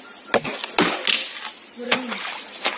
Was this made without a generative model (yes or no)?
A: yes